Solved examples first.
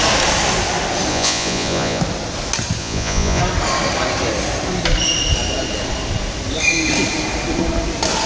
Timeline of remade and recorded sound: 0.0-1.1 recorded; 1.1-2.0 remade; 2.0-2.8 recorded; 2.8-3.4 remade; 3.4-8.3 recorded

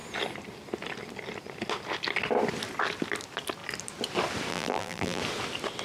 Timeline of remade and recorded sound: 0.0-4.5 recorded; 4.5-5.2 remade; 5.2-5.8 recorded

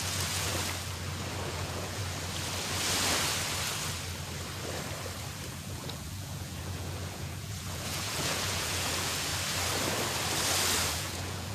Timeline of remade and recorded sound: 0.0-0.5 remade; 0.5-1.5 recorded; 1.5-2.0 remade; 2.0-5.5 recorded; 5.5-9.3 remade; 9.3-10.9 recorded; 10.9-11.5 remade

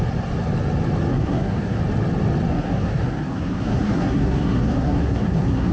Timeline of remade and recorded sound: 0.0-1.1 recorded; 1.1-1.8 remade; 1.8-2.5 recorded; 2.5-5.7 remade

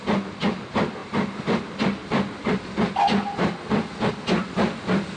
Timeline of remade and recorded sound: 0.0-5.2 recorded

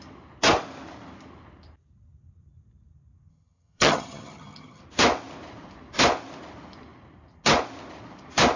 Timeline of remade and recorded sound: 0.0-3.3 recorded; 3.3-4.8 remade; 4.8-8.6 recorded

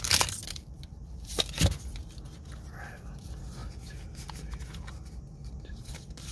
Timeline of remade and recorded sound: 0.0-2.0 remade; 2.0-2.7 recorded; 2.7-3.6 remade; 3.6-5.7 recorded; 5.7-6.3 remade